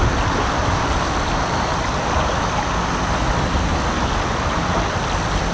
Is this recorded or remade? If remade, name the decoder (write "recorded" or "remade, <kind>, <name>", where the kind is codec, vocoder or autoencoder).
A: recorded